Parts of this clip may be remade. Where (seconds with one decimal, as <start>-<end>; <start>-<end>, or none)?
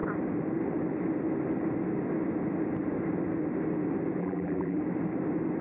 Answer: 4.2-4.8